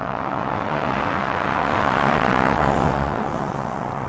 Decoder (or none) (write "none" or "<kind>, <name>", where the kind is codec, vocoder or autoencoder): vocoder, WaveNeXt